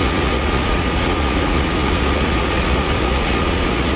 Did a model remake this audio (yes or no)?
yes